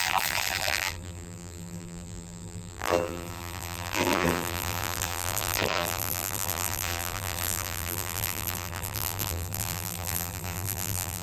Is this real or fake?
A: fake